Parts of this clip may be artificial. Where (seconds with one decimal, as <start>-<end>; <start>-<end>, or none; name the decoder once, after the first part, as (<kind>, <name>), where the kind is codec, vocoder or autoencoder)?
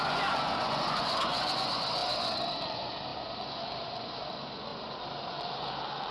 0.0-4.7 (vocoder, Vocos); 5.3-6.1